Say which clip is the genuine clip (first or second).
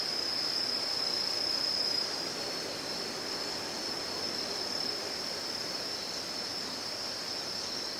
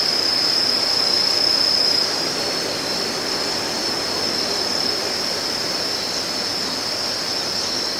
second